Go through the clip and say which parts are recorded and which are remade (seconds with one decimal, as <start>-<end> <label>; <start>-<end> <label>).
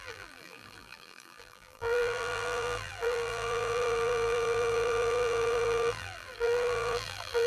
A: 0.0-7.5 remade